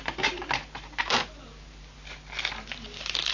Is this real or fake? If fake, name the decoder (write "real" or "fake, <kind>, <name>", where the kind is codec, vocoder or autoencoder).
real